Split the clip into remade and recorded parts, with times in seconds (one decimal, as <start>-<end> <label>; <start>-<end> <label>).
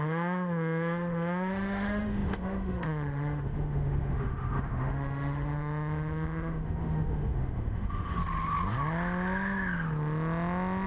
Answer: 0.0-8.2 remade; 8.2-10.9 recorded